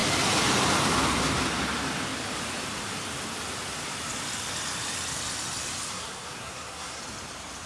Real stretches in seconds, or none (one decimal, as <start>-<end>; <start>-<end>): 0.0-5.9; 7.0-7.7